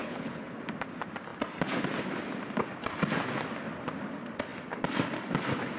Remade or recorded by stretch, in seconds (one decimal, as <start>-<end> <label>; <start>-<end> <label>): 0.0-0.6 remade; 0.6-5.8 recorded